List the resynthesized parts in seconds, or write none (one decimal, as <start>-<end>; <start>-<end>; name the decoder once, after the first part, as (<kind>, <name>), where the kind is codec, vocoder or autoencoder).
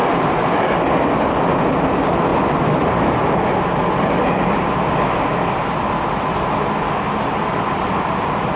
none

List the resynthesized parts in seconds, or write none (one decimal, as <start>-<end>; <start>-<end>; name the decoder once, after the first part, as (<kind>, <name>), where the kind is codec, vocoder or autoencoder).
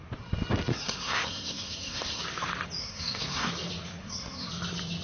0.7-2.2 (codec, SNAC); 2.8-3.5; 4.0-4.5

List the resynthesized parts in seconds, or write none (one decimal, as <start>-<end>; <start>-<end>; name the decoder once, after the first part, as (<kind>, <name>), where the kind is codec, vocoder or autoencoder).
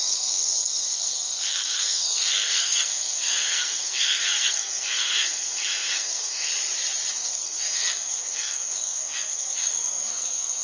0.0-6.5 (codec, SNAC); 7.1-10.6